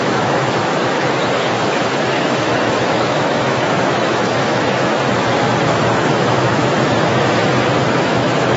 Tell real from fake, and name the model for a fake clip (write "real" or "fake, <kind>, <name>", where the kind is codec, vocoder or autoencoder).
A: fake, autoencoder, DAC-VAE